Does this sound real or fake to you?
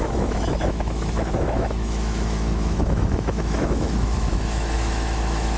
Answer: fake